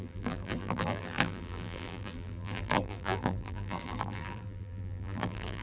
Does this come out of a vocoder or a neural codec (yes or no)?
yes